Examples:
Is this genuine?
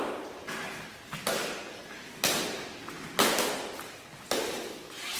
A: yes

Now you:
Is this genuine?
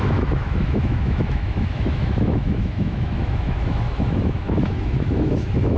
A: no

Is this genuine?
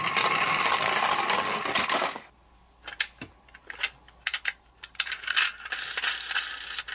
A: yes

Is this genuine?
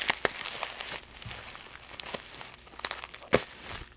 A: yes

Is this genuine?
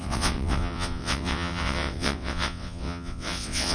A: no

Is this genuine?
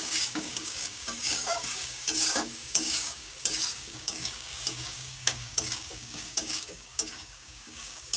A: no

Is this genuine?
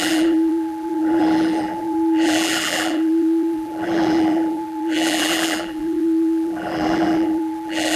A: no